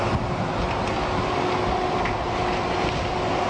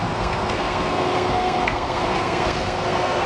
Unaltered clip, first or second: first